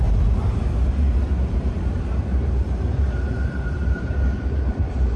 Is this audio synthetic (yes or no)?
yes